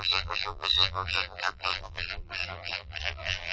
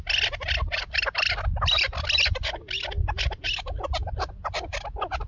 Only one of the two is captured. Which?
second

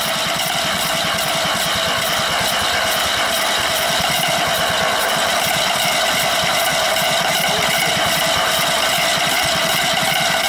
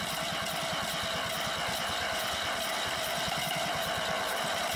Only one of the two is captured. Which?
second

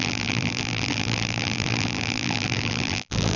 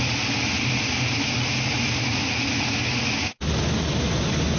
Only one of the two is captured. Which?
second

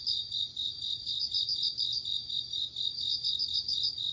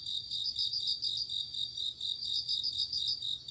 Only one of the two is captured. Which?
second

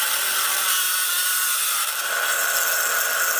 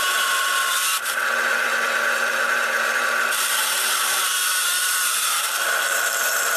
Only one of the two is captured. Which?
first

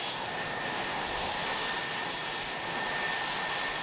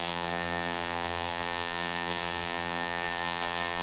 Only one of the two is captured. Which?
first